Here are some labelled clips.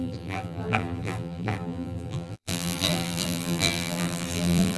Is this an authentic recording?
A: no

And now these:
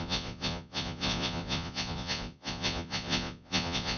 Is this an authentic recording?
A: no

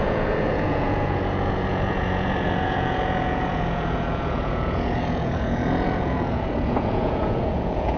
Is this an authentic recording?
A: no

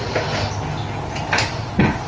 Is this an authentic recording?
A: yes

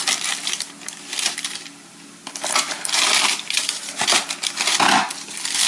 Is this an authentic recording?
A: yes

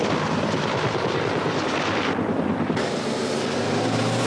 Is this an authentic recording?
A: no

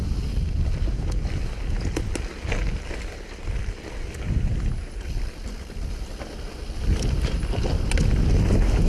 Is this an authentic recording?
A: yes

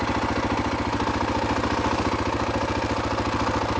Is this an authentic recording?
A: yes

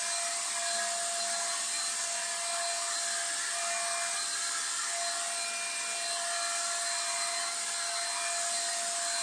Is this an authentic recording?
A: yes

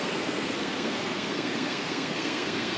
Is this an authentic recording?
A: no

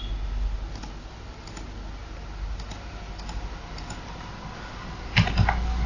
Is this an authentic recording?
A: yes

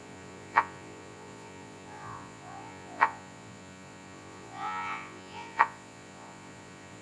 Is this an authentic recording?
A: no